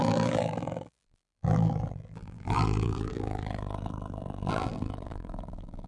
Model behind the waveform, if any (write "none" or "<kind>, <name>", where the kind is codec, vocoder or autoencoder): vocoder, BigVGAN v2